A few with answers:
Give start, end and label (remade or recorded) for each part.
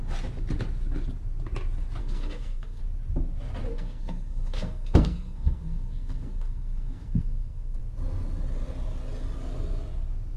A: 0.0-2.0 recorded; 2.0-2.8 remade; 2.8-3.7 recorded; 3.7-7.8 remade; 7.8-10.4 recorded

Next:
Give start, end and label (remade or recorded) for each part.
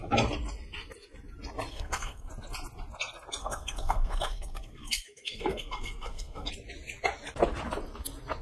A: 0.0-1.7 recorded; 1.7-2.3 remade; 2.3-3.4 recorded; 3.4-6.5 remade; 6.5-8.4 recorded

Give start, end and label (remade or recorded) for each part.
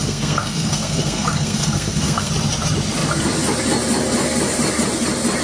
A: 0.0-2.3 remade; 2.3-5.4 recorded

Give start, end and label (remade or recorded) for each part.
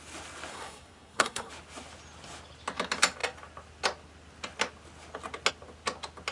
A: 0.0-0.5 recorded; 0.5-1.5 remade; 1.5-6.3 recorded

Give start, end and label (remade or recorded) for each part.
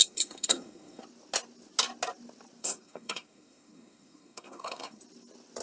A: 0.0-1.0 remade; 1.0-2.6 recorded; 2.6-5.0 remade; 5.0-5.6 recorded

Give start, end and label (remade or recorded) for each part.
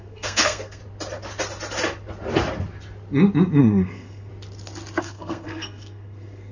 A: 0.0-0.8 remade; 0.8-3.6 recorded; 3.6-4.3 remade; 4.3-5.0 recorded; 5.0-6.5 remade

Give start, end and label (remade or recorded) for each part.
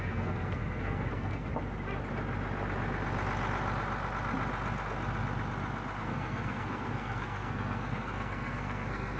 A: 0.0-1.5 remade; 1.5-6.0 recorded; 6.0-9.2 remade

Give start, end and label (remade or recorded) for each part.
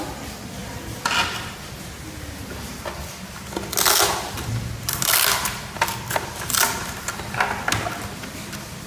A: 0.0-8.9 recorded